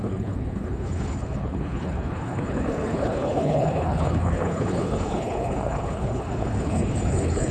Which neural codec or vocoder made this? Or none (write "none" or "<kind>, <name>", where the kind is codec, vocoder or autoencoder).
codec, HILCodec